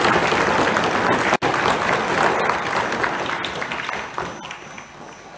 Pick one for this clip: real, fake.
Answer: real